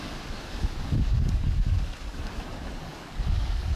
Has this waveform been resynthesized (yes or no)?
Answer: yes